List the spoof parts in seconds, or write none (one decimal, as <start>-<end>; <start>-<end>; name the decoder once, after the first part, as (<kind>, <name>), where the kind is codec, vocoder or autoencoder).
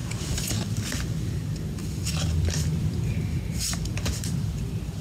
0.0-5.0 (vocoder, BigVGAN v2)